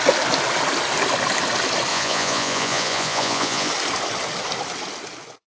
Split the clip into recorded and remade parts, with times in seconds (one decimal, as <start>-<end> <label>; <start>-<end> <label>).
0.0-1.9 recorded; 1.9-3.7 remade; 3.7-5.5 recorded

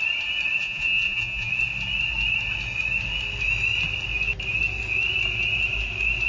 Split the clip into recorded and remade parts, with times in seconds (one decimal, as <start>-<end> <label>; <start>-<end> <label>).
0.0-0.6 recorded; 0.6-1.5 remade; 1.5-6.3 recorded

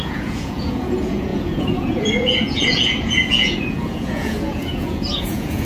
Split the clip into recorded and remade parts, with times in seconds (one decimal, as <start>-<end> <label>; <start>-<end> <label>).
0.0-5.7 remade

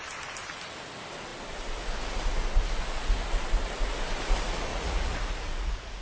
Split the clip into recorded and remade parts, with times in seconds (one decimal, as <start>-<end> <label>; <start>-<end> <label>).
0.0-4.7 recorded; 4.7-6.0 remade

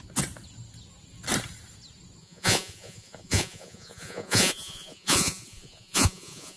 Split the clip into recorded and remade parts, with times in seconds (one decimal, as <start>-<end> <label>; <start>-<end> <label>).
0.0-2.2 recorded; 2.2-6.6 remade